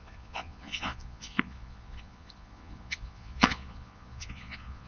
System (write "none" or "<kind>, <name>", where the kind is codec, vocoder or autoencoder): vocoder, Vocos